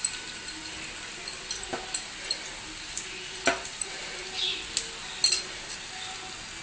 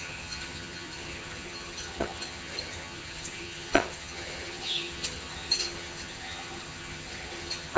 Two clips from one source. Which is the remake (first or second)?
second